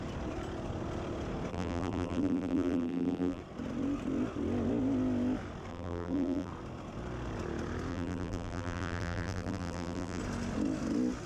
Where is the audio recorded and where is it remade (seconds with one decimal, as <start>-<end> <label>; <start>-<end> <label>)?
0.0-1.5 recorded; 1.5-3.4 remade; 3.4-5.7 recorded; 5.7-6.5 remade; 6.5-7.9 recorded; 7.9-10.2 remade; 10.2-11.3 recorded